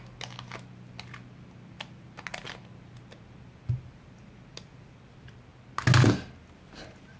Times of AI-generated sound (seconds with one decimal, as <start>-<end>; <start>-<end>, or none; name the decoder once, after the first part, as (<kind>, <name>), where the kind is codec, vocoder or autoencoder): none